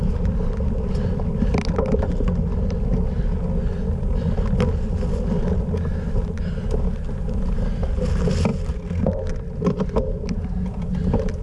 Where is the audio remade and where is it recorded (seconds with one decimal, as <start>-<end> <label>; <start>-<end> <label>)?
0.0-11.4 recorded